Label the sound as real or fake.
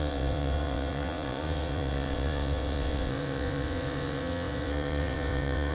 fake